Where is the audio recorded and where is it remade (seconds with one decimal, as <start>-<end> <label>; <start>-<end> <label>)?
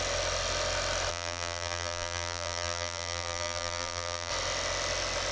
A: 0.0-1.1 recorded; 1.1-4.3 remade; 4.3-5.3 recorded